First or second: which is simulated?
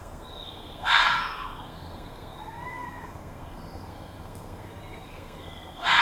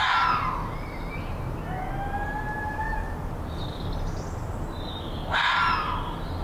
first